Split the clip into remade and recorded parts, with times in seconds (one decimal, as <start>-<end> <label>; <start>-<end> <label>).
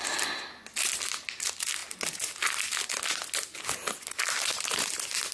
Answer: 0.0-5.3 recorded